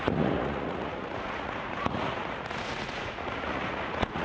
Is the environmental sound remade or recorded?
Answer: remade